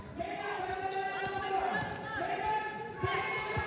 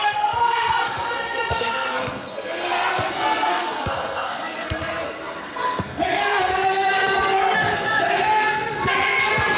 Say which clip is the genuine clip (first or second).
first